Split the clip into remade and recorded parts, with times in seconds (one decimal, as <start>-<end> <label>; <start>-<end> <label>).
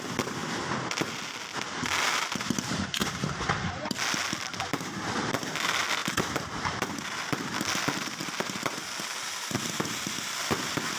0.0-0.4 remade; 0.4-1.0 recorded; 1.0-3.0 remade; 3.0-4.1 recorded; 4.1-11.0 remade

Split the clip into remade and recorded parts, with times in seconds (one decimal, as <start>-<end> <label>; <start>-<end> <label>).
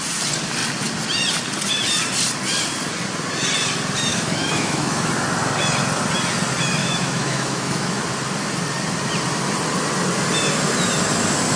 0.0-4.1 recorded; 4.1-5.0 remade; 5.0-6.8 recorded; 6.8-8.0 remade; 8.0-11.6 recorded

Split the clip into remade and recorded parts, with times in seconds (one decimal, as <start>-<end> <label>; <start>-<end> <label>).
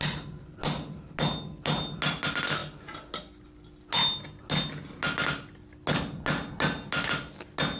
0.0-7.8 recorded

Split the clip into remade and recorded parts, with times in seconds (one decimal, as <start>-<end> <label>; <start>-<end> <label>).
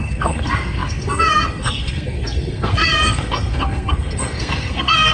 0.0-5.1 remade